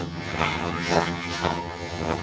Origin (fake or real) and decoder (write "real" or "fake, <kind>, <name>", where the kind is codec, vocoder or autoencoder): fake, vocoder, HiFi-GAN